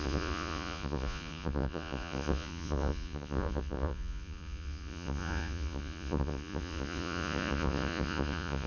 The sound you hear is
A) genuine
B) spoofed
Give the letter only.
B